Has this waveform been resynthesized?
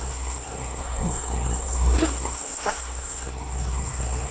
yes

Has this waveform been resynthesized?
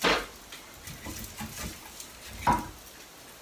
no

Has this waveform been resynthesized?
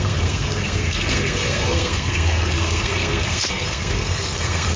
yes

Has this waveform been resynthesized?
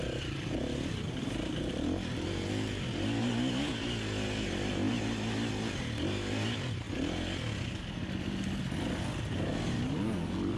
no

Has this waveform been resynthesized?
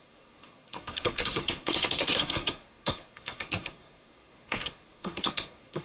yes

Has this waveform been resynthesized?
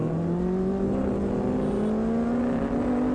no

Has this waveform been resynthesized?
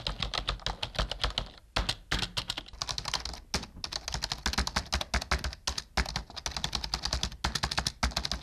no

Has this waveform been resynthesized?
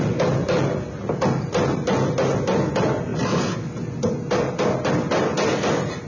no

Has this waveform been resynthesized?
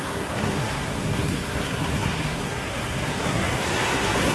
yes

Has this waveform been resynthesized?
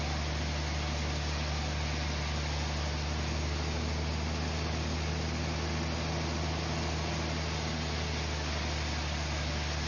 no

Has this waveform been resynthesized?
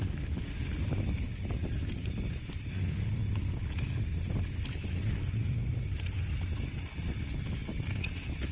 no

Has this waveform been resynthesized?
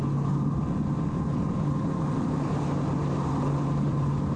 no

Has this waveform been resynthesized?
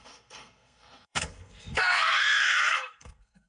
yes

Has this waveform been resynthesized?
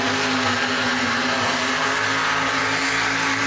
no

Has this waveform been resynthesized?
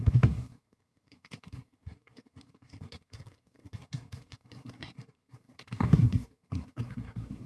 yes